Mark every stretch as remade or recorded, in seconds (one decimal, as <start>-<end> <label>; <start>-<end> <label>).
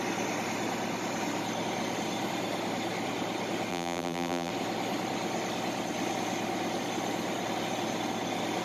0.0-3.7 recorded; 3.7-4.5 remade; 4.5-8.6 recorded